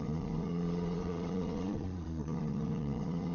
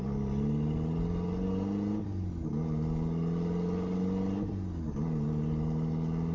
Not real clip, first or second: first